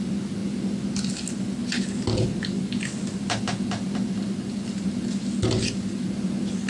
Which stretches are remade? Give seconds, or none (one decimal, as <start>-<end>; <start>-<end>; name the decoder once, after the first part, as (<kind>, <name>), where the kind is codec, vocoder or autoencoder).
none